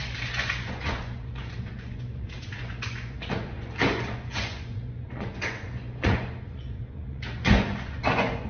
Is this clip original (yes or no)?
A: no